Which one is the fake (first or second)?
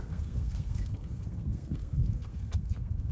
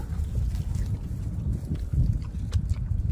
first